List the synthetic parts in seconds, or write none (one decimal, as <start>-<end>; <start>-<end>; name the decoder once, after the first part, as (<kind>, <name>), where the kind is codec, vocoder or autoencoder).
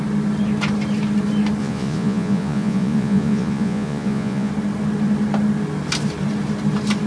1.6-4.5 (vocoder, Vocos)